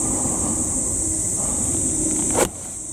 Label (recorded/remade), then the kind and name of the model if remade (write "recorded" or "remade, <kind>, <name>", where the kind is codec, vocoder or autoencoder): remade, vocoder, BigVGAN v2